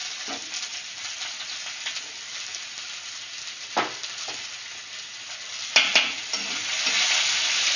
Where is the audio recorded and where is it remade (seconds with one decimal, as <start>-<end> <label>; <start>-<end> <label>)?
0.0-7.8 recorded

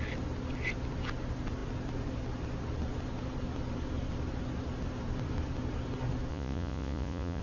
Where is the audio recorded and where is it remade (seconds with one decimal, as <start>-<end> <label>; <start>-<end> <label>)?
0.0-6.3 recorded; 6.3-7.4 remade

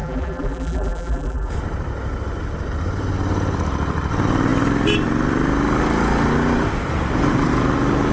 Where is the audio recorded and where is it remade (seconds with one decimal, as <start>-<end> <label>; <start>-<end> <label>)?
0.0-1.5 remade; 1.5-8.1 recorded

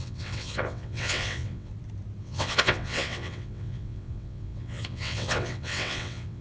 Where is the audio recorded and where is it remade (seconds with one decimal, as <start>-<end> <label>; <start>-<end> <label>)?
0.0-1.7 remade; 1.7-2.2 recorded; 2.2-6.4 remade